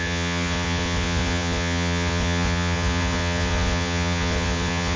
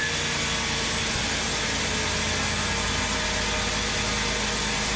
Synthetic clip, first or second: first